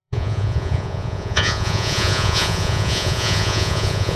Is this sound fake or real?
fake